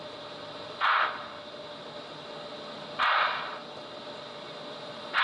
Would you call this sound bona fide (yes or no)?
yes